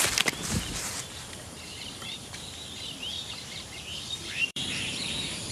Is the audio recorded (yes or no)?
no